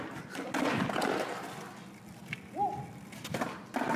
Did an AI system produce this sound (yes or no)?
no